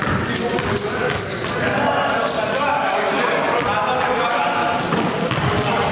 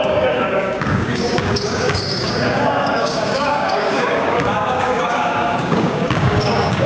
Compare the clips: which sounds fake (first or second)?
second